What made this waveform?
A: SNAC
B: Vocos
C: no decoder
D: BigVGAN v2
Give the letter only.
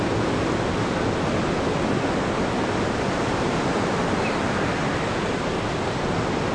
C